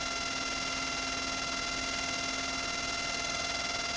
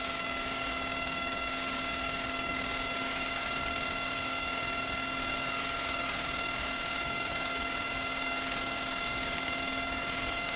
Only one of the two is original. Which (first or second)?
first